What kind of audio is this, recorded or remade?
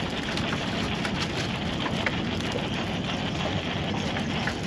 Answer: recorded